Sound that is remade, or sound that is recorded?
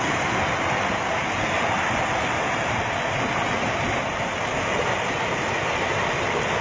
recorded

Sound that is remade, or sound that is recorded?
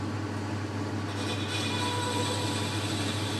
recorded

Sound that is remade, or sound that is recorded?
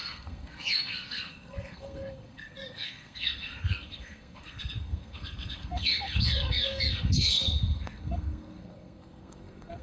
remade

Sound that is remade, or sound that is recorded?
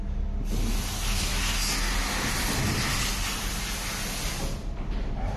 recorded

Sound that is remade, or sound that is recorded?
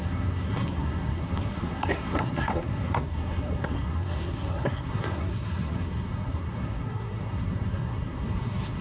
remade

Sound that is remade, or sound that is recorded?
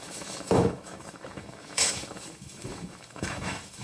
remade